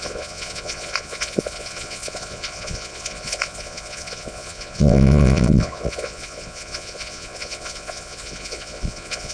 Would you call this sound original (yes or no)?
no